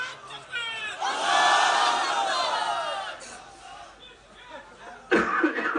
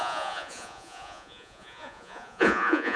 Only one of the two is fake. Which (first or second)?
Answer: second